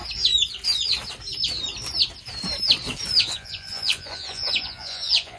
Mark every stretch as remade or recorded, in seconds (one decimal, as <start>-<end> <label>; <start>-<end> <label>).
0.0-3.2 recorded; 3.2-5.4 remade